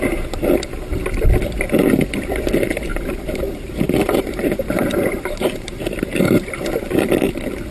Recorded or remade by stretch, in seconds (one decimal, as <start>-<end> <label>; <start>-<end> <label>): 0.0-2.9 recorded; 2.9-6.5 remade; 6.5-7.7 recorded